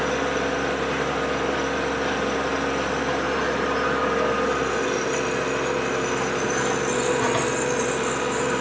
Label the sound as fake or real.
real